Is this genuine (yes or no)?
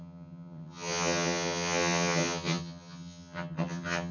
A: no